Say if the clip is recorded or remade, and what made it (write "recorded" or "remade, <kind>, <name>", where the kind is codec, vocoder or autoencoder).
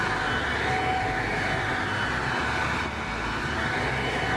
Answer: recorded